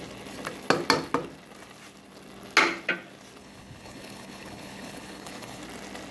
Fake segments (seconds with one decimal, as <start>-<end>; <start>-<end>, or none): 3.4-5.6